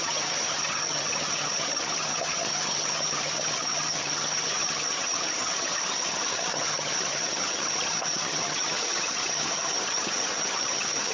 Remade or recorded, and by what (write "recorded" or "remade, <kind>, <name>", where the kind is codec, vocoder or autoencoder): remade, vocoder, HiFi-GAN